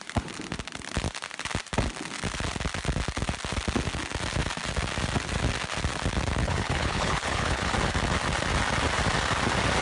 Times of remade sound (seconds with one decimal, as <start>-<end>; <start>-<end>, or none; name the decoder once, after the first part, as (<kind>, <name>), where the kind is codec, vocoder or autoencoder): 6.4-7.7 (codec, HILCodec)